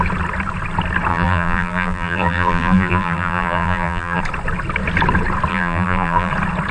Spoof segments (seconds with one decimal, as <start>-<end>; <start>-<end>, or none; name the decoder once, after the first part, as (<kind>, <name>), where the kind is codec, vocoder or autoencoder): 1.1-4.2 (vocoder, BigVGAN v2); 5.5-6.3